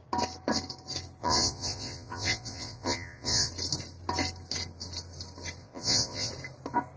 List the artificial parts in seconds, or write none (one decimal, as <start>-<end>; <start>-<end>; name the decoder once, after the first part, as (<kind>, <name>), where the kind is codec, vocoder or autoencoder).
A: 1.2-3.5 (vocoder, Vocos); 5.6-6.3